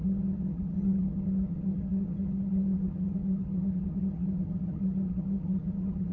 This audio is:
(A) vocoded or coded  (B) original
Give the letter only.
A